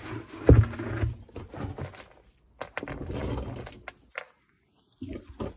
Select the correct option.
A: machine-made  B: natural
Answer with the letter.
B